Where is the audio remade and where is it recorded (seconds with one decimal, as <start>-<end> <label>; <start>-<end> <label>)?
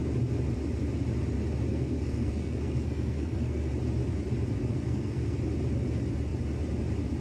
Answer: 0.0-1.7 recorded; 1.7-3.7 remade; 3.7-4.7 recorded; 4.7-5.4 remade; 5.4-7.2 recorded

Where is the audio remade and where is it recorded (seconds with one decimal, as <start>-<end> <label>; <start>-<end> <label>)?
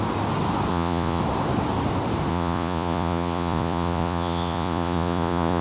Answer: 0.0-0.7 recorded; 0.7-1.2 remade; 1.2-2.3 recorded; 2.3-5.6 remade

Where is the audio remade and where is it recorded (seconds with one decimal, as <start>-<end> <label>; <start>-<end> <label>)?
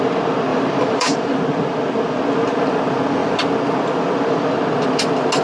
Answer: 0.0-0.5 recorded; 0.5-1.4 remade; 1.4-5.4 recorded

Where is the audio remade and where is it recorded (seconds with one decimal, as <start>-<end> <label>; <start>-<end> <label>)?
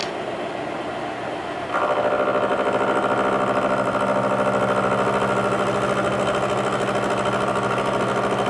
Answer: 0.0-8.5 recorded